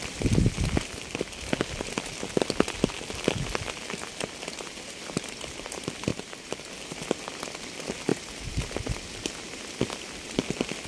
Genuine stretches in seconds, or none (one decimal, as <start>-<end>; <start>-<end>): 0.0-6.1; 6.7-10.9